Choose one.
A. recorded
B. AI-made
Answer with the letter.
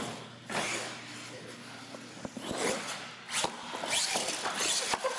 A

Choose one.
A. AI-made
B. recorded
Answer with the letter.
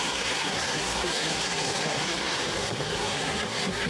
A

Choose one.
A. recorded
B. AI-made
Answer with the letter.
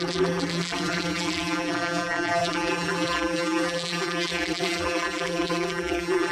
B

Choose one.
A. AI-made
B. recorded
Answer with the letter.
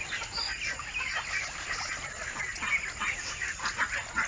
B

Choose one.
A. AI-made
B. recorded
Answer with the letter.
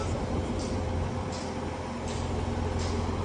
B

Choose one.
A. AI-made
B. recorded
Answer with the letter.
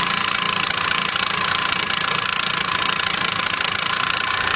B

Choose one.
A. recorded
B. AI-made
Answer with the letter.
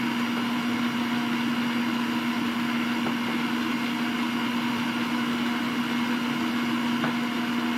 A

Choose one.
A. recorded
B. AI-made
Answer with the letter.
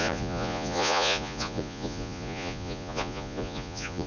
B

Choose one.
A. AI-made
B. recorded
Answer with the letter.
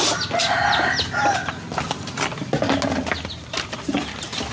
B